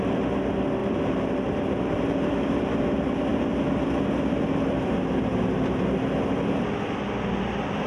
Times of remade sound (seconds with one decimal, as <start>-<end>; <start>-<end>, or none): 0.8-2.8